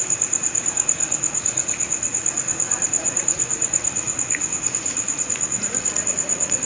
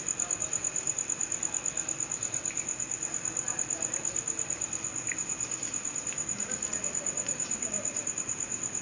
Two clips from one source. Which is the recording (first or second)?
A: second